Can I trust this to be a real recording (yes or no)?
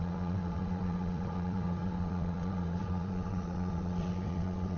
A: no